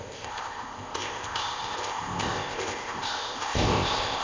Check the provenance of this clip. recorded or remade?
remade